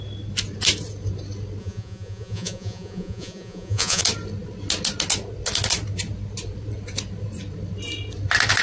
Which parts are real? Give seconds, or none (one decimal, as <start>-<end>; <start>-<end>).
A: 0.0-1.6; 4.0-8.6